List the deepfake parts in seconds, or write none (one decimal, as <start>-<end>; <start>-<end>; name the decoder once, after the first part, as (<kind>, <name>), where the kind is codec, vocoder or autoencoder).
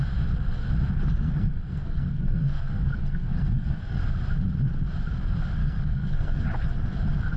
1.1-4.0 (codec, SNAC); 5.6-6.4